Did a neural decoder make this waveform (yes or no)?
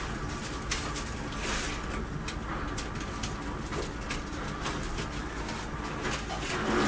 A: no